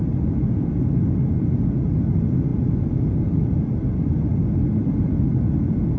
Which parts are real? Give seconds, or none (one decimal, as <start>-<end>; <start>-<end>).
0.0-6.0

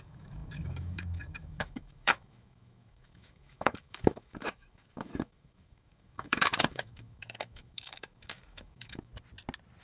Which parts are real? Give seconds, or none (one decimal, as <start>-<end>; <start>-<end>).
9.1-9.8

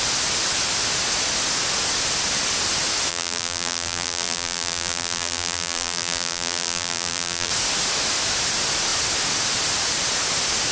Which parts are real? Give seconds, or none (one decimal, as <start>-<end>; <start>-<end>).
0.0-3.1; 7.5-10.7